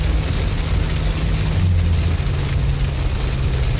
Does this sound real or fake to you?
real